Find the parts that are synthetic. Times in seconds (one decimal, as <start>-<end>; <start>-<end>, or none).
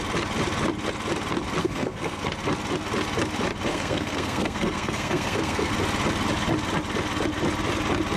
1.6-2.2; 3.7-5.7